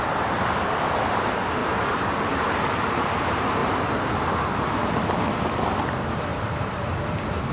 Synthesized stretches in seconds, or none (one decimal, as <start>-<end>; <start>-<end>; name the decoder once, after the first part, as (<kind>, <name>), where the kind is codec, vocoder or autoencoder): 1.6-3.0 (vocoder, BigVGAN v2); 3.6-4.1; 6.3-6.8